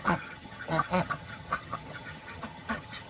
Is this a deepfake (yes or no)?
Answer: yes